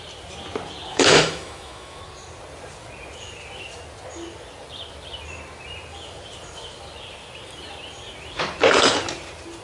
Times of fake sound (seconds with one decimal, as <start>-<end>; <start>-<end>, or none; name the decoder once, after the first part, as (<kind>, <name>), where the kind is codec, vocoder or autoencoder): 0.9-2.0 (autoencoder, DAC-VAE)